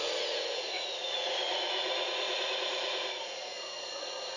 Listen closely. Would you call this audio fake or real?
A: fake